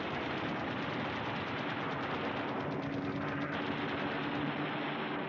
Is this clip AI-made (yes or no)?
no